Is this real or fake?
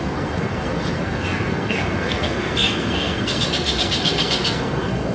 fake